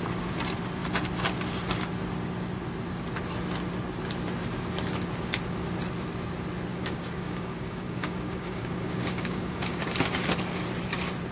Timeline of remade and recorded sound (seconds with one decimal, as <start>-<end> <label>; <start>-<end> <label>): 0.0-6.7 recorded; 6.7-9.8 remade; 9.8-11.3 recorded